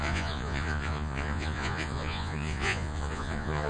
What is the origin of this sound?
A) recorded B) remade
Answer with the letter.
B